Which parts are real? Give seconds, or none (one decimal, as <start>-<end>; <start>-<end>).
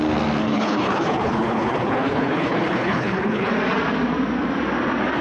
0.0-0.4; 3.5-5.2